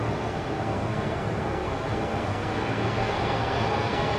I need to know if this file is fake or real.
fake